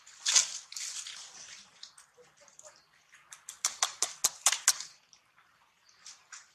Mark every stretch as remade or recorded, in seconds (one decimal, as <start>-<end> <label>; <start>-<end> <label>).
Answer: 0.0-6.5 recorded

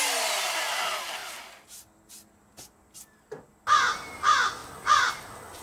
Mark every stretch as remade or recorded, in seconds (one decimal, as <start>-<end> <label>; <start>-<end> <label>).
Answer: 0.0-5.6 recorded